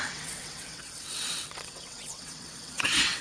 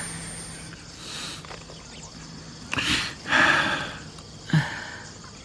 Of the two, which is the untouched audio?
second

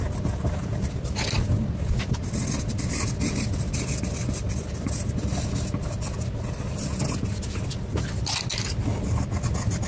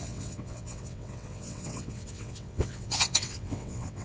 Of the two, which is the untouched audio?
first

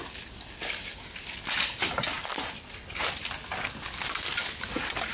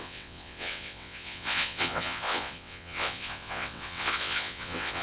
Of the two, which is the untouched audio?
first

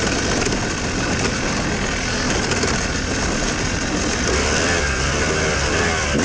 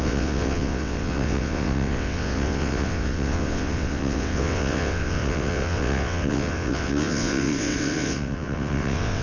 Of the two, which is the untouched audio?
first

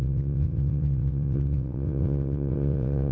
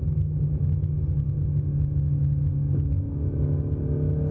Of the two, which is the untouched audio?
second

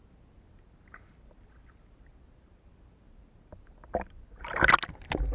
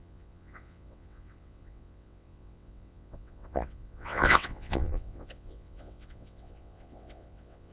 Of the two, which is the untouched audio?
first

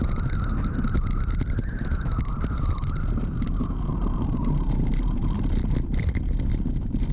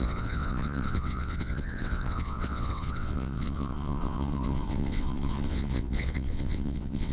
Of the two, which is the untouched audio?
first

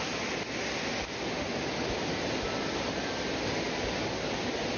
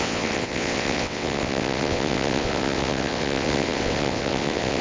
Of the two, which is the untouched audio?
first